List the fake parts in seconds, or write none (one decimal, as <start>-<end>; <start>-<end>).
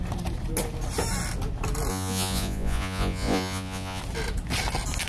1.9-4.0